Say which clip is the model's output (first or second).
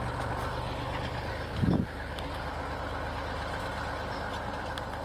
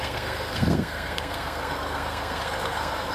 second